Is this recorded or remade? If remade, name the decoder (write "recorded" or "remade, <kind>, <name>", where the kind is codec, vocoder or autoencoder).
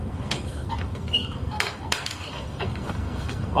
remade, codec, SNAC